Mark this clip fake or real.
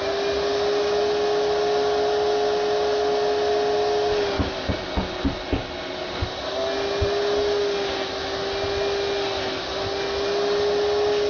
real